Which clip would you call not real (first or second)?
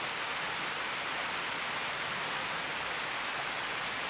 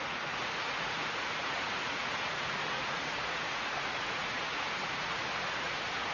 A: second